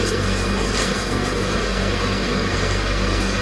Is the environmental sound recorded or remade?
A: remade